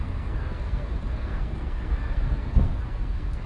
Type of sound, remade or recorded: remade